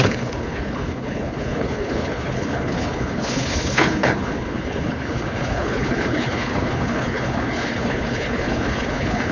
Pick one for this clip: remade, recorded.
remade